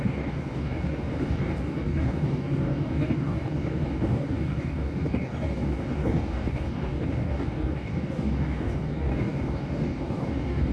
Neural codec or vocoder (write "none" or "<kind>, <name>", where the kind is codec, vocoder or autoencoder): codec, DAC